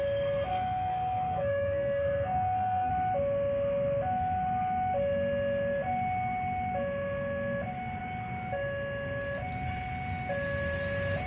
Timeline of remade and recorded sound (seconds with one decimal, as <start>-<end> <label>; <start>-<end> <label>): 0.0-0.5 recorded; 0.5-2.9 remade; 2.9-11.3 recorded